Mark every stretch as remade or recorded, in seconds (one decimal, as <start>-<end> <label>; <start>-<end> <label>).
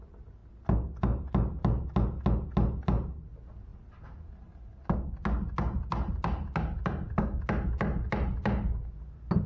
0.0-9.5 recorded